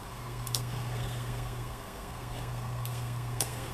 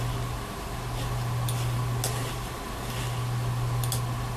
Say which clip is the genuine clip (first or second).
second